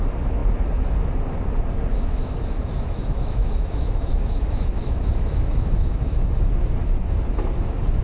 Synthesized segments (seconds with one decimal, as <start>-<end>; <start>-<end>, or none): 1.9-6.2